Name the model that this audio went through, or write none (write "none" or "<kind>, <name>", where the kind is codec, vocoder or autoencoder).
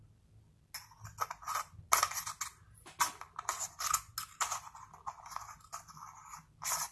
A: none